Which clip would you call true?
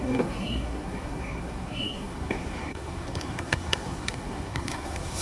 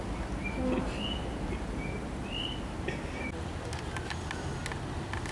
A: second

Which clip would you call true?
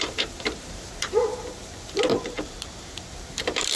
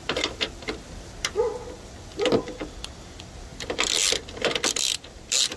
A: second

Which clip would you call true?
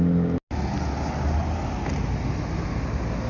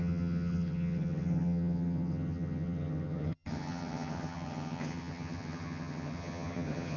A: first